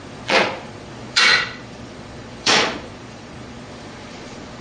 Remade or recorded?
remade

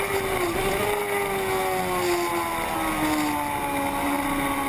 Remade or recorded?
recorded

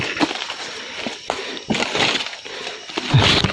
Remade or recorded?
recorded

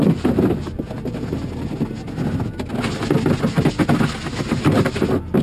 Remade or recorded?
recorded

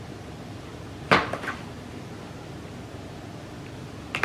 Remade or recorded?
recorded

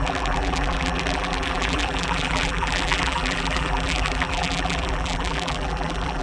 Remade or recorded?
remade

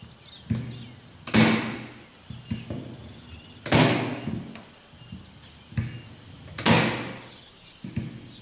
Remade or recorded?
recorded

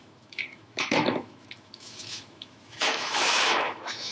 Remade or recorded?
remade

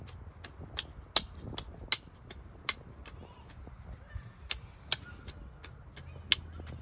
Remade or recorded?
recorded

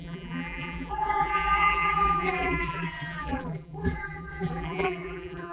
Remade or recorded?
remade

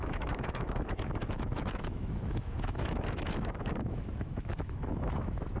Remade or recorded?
remade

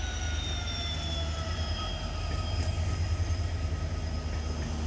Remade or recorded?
recorded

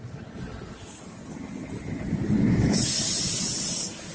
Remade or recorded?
recorded